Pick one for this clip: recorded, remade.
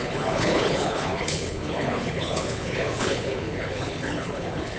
remade